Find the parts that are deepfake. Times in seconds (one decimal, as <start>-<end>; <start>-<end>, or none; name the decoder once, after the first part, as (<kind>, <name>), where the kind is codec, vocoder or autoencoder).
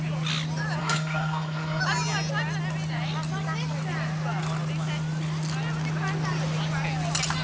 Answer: 0.8-1.8 (codec, SNAC)